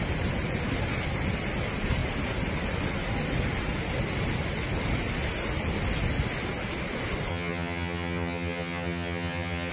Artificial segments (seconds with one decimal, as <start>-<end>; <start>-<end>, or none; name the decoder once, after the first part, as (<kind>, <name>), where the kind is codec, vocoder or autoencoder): 7.3-9.7 (vocoder, HiFi-GAN)